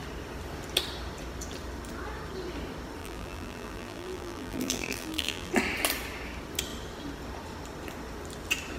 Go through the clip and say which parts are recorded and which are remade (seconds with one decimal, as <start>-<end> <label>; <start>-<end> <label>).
0.0-3.0 recorded; 3.0-5.5 remade; 5.5-8.8 recorded

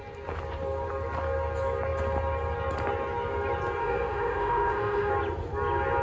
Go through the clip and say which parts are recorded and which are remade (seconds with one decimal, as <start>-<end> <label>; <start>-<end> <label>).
0.0-3.8 recorded; 3.8-5.1 remade; 5.1-6.0 recorded

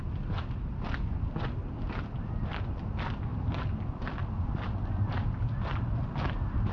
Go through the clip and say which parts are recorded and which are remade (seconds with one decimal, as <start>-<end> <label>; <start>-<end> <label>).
0.0-6.7 recorded